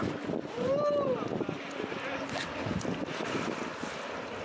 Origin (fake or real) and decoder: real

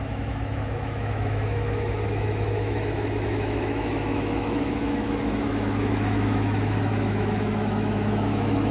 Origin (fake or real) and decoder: fake, autoencoder, DAC-VAE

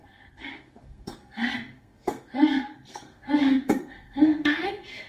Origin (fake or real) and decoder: fake, codec, SNAC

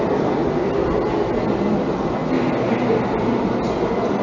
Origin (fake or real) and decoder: real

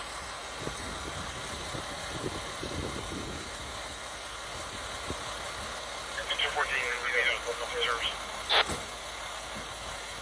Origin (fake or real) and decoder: real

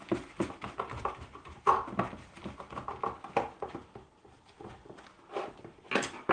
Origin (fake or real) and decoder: real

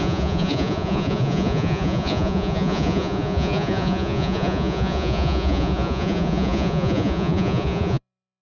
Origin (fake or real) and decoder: fake, vocoder, Vocos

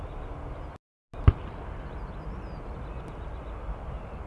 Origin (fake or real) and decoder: real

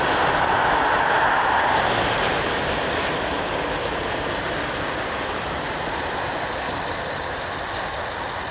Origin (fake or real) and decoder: real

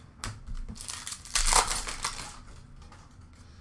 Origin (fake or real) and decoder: real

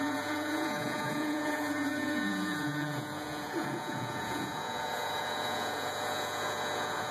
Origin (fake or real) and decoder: fake, vocoder, Vocos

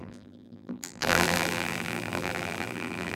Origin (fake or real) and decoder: fake, vocoder, BigVGAN v2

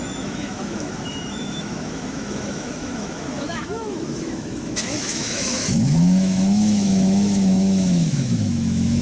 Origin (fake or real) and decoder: fake, autoencoder, DAC-VAE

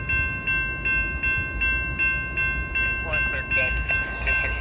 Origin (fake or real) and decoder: real